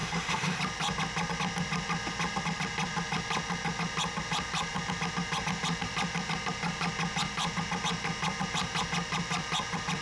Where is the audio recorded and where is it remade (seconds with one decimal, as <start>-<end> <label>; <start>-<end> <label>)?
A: 0.0-0.6 remade; 0.6-10.0 recorded